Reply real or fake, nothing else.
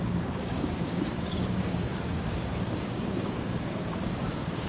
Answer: fake